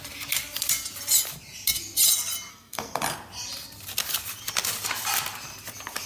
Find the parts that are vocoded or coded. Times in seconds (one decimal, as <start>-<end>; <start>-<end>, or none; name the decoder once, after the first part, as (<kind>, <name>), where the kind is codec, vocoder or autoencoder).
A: 2.5-3.0 (codec, SNAC)